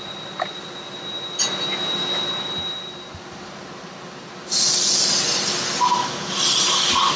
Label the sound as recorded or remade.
recorded